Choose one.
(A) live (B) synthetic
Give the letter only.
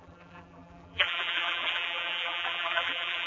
B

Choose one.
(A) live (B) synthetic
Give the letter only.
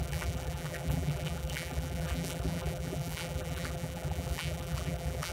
B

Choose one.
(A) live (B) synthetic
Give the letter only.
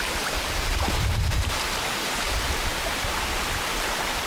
B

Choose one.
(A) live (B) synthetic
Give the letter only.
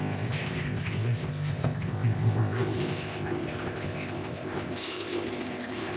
B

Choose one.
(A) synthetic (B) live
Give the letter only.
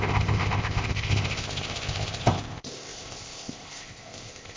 A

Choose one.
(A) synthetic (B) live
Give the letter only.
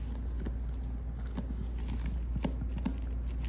B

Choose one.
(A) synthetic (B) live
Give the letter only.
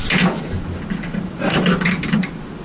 B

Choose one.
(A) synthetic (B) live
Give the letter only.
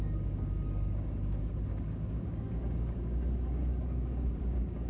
A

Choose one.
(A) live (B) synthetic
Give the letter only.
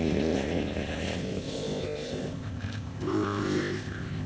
B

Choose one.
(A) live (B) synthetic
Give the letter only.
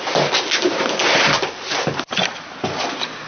A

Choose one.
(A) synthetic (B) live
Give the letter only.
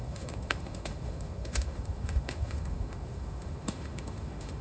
A